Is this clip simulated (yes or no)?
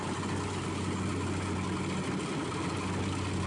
no